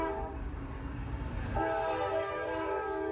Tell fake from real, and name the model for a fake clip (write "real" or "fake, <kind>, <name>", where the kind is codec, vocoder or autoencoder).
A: fake, codec, DAC